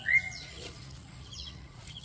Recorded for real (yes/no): no